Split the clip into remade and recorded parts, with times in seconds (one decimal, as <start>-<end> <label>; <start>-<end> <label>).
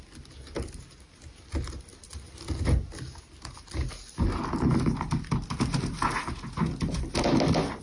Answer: 0.0-7.8 recorded